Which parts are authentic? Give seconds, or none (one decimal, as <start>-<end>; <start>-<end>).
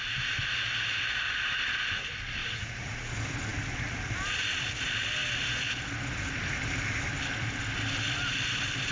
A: 0.0-2.4; 3.1-8.9